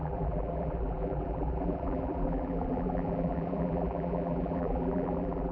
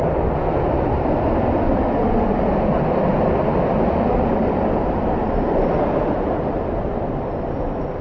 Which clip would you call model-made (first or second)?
first